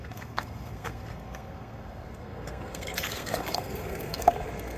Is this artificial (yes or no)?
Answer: yes